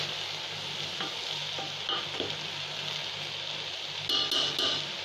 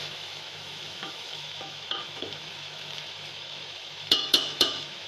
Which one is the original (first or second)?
first